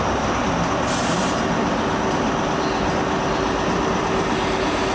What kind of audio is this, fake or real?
real